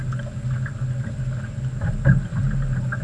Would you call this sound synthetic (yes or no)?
no